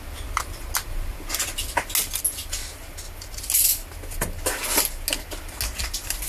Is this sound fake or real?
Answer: real